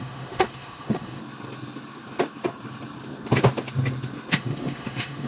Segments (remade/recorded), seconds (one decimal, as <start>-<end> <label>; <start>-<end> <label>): 0.0-1.2 remade; 1.2-4.3 recorded; 4.3-5.3 remade